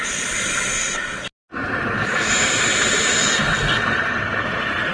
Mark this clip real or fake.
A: real